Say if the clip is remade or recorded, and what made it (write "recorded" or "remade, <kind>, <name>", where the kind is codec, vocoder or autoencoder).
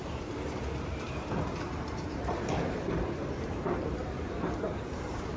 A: remade, vocoder, BigVGAN v2